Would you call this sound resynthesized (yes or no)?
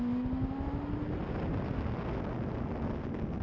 no